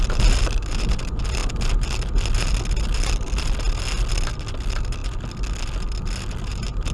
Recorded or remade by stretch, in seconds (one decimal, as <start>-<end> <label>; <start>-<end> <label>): 0.0-6.9 recorded